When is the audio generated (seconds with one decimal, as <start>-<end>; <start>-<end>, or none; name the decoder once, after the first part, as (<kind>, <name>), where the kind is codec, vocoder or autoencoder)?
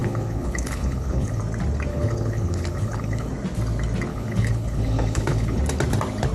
0.0-1.4 (codec, HILCodec); 1.9-3.3; 4.1-5.6